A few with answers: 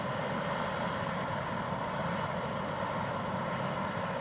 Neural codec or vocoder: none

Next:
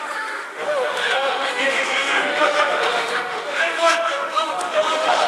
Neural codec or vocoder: autoencoder, DAC-VAE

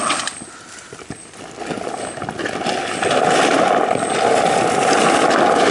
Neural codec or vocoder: none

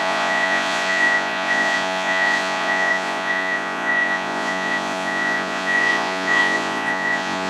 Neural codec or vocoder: vocoder, Vocos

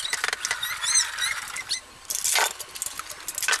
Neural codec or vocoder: none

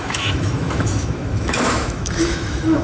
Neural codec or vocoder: autoencoder, DAC-VAE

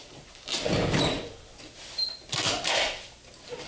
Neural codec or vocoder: none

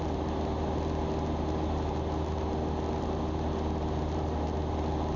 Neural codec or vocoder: none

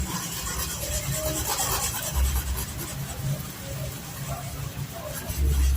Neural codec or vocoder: none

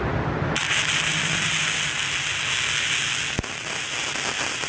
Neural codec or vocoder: none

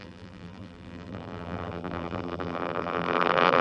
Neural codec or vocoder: vocoder, BigVGAN v2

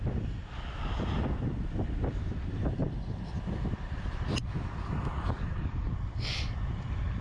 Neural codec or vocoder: vocoder, BigVGAN v2